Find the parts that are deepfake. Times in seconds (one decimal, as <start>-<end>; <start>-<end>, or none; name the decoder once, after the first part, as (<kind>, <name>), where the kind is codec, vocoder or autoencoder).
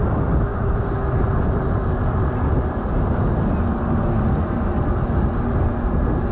none